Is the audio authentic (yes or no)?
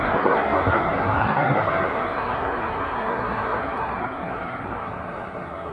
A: no